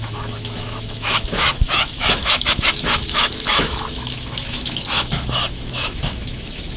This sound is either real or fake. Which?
fake